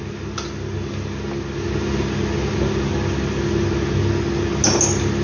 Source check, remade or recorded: recorded